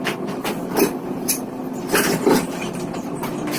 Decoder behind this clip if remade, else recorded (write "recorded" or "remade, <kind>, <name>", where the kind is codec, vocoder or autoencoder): recorded